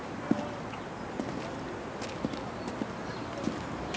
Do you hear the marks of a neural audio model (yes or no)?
no